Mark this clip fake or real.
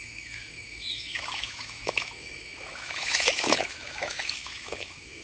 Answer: fake